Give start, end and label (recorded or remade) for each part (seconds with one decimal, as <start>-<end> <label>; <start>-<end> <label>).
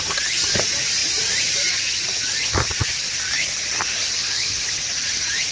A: 0.0-4.2 recorded; 4.2-4.8 remade; 4.8-5.5 recorded